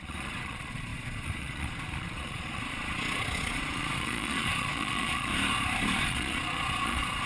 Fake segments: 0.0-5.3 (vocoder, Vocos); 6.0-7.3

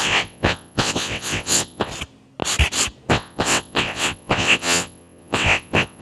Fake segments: 0.0-1.9 (vocoder, WaveNeXt); 3.1-6.0